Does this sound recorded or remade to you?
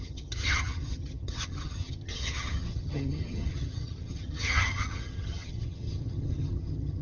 remade